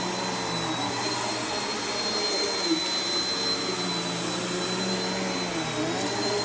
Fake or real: real